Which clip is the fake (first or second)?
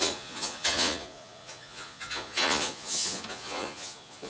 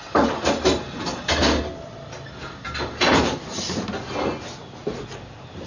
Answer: first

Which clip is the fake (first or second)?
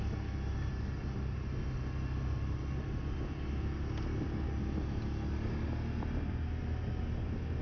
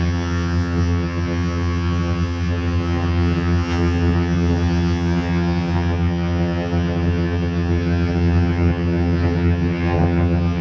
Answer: second